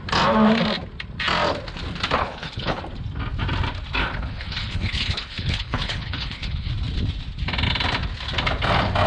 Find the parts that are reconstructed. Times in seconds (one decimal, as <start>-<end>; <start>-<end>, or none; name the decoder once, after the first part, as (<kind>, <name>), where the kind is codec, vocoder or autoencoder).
2.2-2.8 (codec, HILCodec); 4.0-6.7